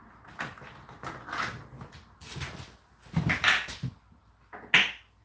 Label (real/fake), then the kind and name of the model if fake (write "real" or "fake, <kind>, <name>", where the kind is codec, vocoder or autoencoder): real